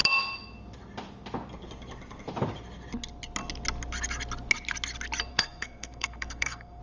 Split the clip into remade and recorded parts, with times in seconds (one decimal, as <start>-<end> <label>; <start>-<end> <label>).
0.0-5.3 recorded; 5.3-6.8 remade